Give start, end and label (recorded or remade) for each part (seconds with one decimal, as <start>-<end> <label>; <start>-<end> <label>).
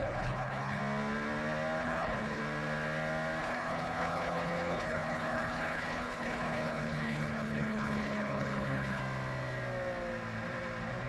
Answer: 0.0-0.8 remade; 0.8-1.8 recorded; 1.8-2.4 remade; 2.4-3.4 recorded; 3.4-9.0 remade; 9.0-11.1 recorded